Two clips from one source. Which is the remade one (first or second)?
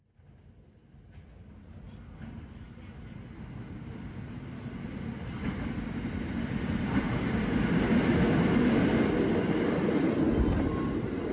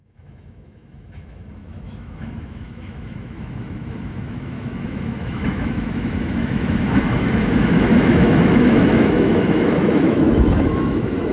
second